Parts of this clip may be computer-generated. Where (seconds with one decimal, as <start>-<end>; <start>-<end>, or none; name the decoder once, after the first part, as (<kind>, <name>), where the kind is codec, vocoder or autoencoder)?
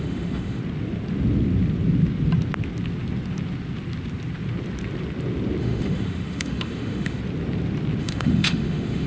0.0-0.6 (autoencoder, DAC-VAE); 5.6-7.2; 8.0-9.1